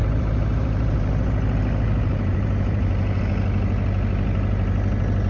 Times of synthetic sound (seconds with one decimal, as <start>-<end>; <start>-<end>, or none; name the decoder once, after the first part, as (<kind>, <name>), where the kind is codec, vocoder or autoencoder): 0.0-3.2 (vocoder, BigVGAN v2)